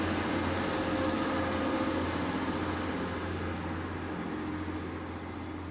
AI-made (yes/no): no